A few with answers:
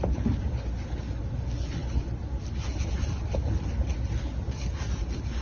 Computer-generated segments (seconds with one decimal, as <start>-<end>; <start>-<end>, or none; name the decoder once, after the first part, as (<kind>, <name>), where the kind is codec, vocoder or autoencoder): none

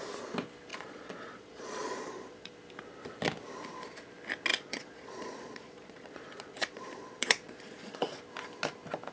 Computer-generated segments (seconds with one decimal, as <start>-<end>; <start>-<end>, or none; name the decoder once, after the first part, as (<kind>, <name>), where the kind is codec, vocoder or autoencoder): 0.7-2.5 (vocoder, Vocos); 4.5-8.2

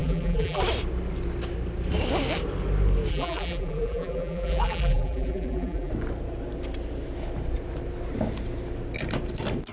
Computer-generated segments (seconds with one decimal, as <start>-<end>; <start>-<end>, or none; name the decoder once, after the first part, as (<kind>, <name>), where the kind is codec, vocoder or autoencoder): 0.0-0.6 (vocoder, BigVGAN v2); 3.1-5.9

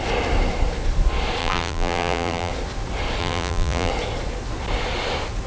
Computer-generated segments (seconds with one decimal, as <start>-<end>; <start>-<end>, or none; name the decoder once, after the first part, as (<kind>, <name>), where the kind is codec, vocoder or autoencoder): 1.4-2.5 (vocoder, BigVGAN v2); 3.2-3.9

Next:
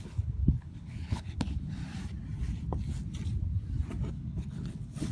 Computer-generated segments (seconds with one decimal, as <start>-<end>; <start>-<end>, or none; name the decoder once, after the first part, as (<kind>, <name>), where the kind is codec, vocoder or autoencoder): 0.0-1.8 (codec, HILCodec); 4.1-5.1

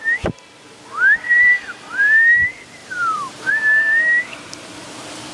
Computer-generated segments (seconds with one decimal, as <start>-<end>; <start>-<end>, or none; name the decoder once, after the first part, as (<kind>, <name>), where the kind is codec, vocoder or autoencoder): 2.8-3.5 (vocoder, BigVGAN v2)